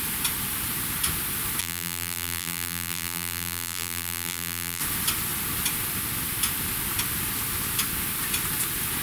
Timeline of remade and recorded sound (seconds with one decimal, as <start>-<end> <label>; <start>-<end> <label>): 0.0-1.6 recorded; 1.6-4.8 remade; 4.8-9.0 recorded